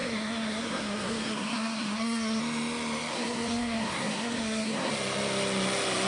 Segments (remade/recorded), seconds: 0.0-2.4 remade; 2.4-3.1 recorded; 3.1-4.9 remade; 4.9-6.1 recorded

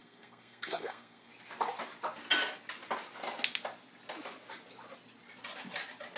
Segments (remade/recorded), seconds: 0.0-1.3 remade; 1.3-6.2 recorded

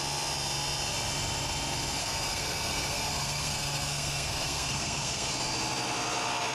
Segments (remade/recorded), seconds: 0.0-2.0 recorded; 2.0-5.3 remade; 5.3-6.5 recorded

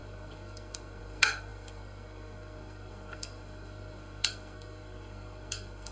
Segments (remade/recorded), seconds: 0.0-5.9 remade